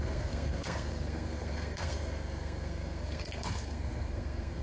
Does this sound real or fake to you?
fake